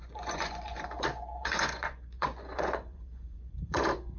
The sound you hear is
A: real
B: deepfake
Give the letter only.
B